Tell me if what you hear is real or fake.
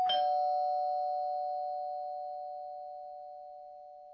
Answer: real